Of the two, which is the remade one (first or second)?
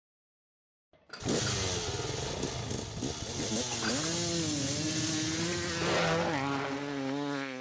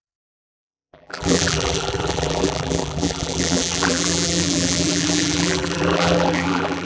second